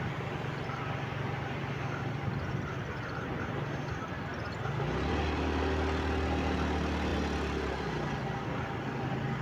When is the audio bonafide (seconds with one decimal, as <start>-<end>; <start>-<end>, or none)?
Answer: 0.0-9.4